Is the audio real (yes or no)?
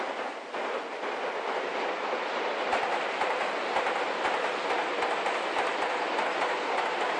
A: yes